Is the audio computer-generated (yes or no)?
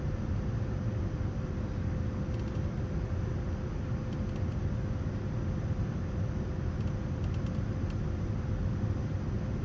no